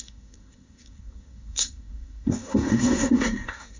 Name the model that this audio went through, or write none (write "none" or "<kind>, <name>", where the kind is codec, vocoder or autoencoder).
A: codec, SNAC